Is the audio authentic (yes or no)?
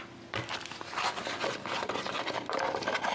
yes